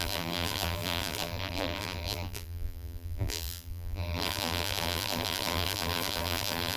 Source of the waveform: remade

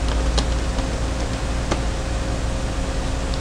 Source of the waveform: recorded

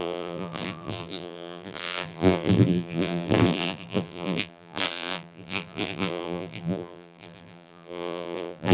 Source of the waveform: remade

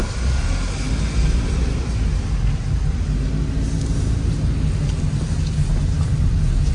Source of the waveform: recorded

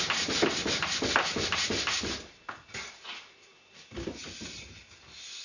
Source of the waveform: recorded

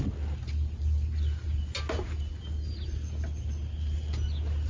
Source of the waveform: recorded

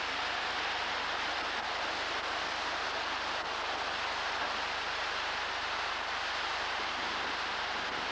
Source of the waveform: recorded